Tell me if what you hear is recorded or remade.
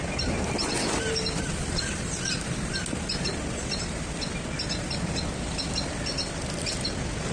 recorded